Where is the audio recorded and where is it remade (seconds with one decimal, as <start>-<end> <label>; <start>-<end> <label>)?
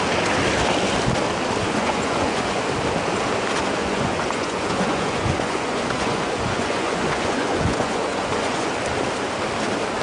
0.0-1.6 recorded; 1.6-2.6 remade; 2.6-3.8 recorded; 3.8-8.7 remade; 8.7-10.0 recorded